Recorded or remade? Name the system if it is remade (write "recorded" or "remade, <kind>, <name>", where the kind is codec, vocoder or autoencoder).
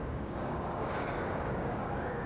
remade, codec, DAC